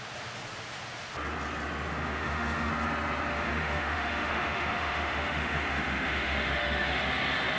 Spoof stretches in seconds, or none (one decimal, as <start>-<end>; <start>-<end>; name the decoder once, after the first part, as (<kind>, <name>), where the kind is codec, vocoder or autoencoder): 1.9-2.7 (autoencoder, DAC-VAE); 3.3-7.0